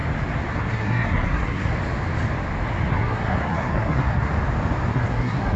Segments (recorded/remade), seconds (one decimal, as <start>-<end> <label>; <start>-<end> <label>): 0.0-0.5 recorded; 0.5-1.7 remade; 1.7-2.9 recorded; 2.9-4.3 remade; 4.3-4.9 recorded; 4.9-5.6 remade